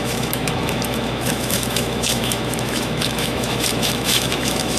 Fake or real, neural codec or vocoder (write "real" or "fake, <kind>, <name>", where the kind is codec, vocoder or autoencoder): fake, autoencoder, DAC-VAE